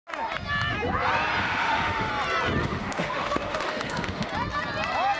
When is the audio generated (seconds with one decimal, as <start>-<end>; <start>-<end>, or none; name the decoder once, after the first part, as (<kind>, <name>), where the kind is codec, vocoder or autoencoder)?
1.4-2.1 (autoencoder, DAC-VAE); 2.6-4.3